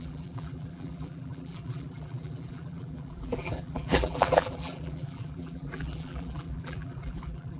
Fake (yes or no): yes